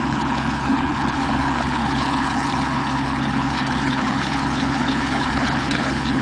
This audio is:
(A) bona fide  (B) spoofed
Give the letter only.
B